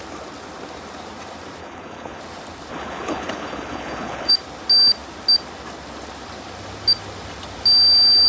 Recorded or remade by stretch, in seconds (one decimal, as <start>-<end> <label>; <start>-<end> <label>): 0.0-1.6 recorded; 1.6-2.2 remade; 2.2-2.7 recorded; 2.7-4.3 remade; 4.3-8.3 recorded